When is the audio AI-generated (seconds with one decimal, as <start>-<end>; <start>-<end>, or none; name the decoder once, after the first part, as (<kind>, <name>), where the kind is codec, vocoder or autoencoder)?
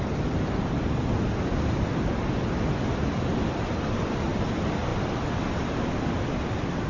none